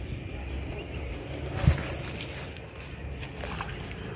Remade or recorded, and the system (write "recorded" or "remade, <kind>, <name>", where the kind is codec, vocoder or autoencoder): recorded